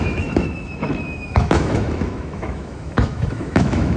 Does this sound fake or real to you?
fake